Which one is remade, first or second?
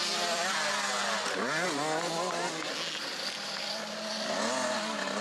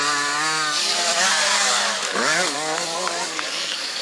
second